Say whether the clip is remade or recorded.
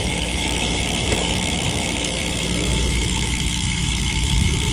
remade